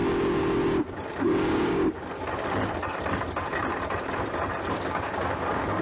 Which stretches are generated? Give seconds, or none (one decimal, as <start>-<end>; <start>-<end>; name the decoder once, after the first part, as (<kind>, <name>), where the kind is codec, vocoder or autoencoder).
1.2-1.8 (codec, DAC); 4.7-5.8